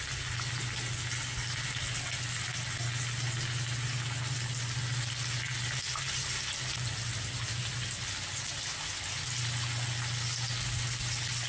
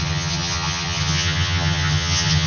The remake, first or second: second